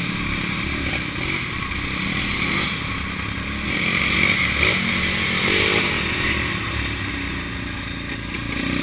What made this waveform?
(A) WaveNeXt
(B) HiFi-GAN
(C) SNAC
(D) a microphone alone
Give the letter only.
D